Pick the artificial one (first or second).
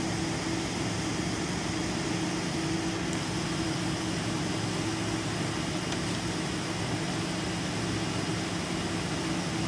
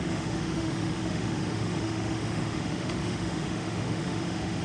second